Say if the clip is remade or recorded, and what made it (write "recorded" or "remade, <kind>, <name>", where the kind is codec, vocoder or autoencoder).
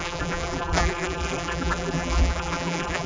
remade, vocoder, BigVGAN v2